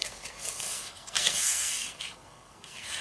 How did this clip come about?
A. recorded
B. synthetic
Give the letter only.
B